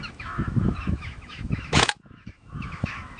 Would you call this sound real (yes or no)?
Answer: no